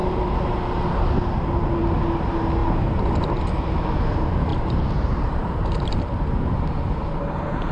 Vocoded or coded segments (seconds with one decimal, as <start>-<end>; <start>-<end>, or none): 4.5-7.7